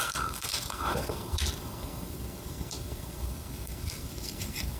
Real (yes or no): no